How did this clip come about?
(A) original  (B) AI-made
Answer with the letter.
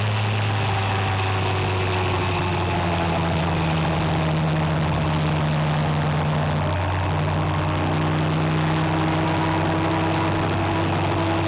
A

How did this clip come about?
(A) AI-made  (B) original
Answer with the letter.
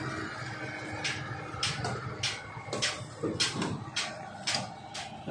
B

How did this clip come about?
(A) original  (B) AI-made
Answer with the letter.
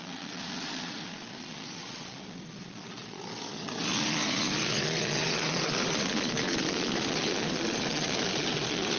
B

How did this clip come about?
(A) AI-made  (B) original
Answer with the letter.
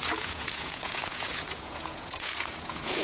A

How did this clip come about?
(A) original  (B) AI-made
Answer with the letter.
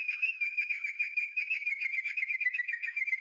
B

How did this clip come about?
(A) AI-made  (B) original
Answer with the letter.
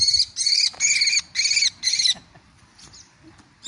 B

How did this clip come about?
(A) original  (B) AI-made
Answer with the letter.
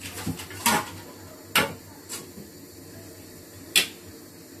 A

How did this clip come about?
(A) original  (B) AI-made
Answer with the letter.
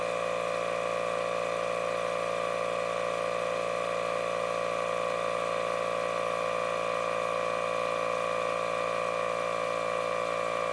A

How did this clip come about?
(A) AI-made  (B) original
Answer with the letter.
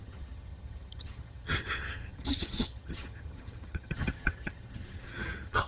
A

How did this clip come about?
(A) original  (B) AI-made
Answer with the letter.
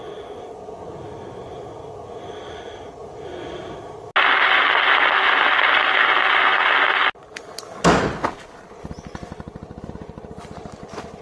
A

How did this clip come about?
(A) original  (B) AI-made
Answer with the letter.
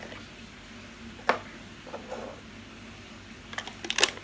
A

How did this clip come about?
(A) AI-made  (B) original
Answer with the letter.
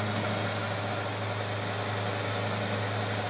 B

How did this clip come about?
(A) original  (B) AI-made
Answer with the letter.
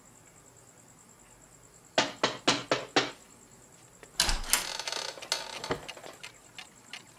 A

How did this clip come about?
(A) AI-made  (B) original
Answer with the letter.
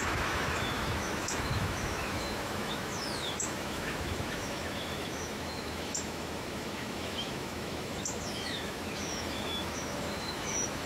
A